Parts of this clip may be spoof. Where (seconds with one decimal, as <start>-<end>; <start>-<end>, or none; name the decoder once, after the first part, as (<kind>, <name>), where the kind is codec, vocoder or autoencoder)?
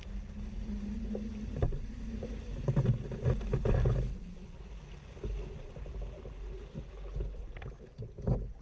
4.1-4.6 (vocoder, WaveNeXt)